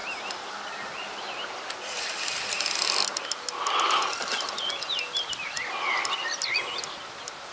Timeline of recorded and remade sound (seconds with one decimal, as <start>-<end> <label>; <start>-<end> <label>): 0.0-7.5 recorded